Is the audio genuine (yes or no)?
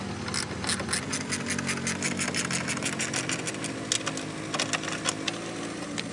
yes